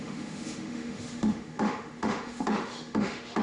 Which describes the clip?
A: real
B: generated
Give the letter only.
B